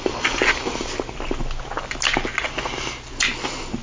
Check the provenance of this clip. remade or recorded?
recorded